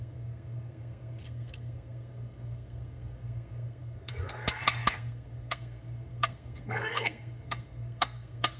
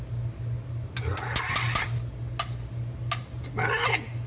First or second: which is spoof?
first